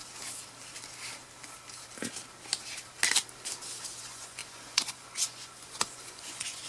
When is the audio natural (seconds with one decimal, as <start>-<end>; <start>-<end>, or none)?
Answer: 0.0-4.0